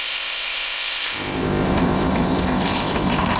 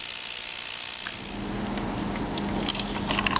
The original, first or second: second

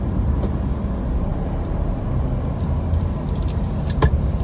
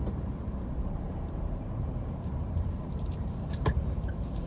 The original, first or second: first